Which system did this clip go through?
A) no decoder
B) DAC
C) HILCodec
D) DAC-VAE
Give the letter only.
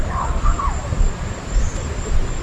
A